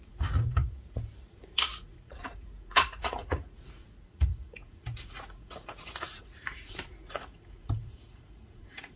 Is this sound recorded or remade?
remade